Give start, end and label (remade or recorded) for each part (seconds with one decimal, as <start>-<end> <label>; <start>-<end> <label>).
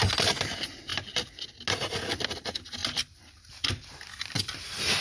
0.0-5.0 recorded